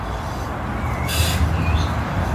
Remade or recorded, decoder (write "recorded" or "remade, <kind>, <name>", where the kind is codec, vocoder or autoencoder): recorded